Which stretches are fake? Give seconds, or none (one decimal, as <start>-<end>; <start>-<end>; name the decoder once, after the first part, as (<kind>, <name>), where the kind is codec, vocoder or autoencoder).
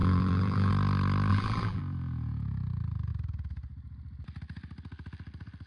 0.0-0.7 (vocoder, BigVGAN v2); 1.3-1.8